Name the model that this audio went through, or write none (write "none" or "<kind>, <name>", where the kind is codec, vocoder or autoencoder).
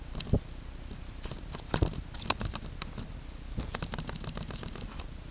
none